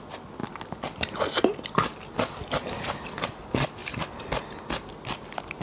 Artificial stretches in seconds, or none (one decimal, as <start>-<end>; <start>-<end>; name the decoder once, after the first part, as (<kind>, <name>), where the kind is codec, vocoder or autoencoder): none